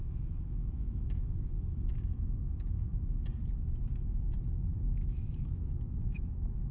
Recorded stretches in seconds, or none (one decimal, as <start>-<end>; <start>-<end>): 2.9-5.0